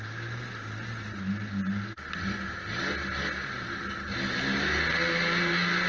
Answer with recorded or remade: recorded